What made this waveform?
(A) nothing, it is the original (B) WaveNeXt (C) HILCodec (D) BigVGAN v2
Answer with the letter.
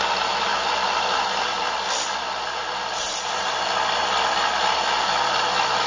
A